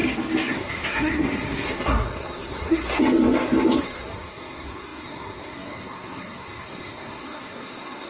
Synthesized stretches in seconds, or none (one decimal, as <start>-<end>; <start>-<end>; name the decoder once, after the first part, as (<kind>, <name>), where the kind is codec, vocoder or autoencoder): 0.5-3.0 (codec, SNAC); 3.8-8.1